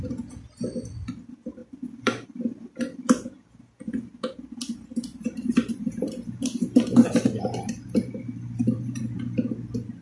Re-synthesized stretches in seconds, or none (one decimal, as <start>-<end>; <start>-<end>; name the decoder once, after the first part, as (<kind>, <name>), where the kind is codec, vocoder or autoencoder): 1.6-3.6 (vocoder, BigVGAN v2); 5.1-9.0